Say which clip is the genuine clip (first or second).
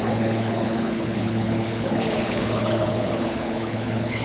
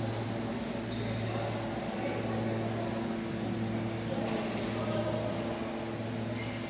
second